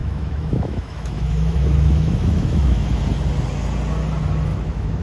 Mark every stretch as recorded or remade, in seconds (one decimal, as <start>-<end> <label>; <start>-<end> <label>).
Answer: 0.0-3.0 remade; 3.0-4.5 recorded; 4.5-5.0 remade